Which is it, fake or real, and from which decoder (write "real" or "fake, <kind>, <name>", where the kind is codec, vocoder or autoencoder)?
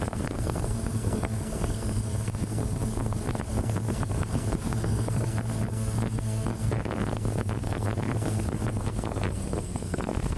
fake, codec, SNAC